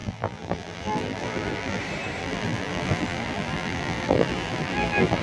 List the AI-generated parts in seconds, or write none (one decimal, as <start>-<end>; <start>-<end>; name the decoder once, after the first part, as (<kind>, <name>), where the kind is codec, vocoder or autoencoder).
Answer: 0.0-1.8 (vocoder, BigVGAN v2); 2.2-5.2